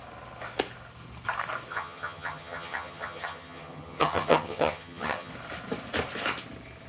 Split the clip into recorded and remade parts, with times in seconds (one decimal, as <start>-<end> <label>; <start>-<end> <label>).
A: 0.0-1.7 recorded; 1.7-5.3 remade; 5.3-6.9 recorded